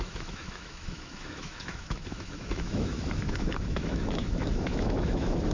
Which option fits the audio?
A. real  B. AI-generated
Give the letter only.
B